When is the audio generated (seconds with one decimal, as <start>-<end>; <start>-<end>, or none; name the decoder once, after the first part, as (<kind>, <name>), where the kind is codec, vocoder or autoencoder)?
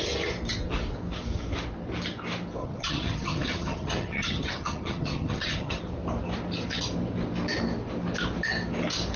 2.6-5.8 (vocoder, HiFi-GAN)